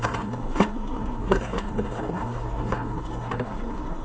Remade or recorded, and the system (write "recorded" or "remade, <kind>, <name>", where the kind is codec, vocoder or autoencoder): remade, codec, SNAC